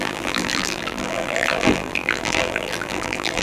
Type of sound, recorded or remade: remade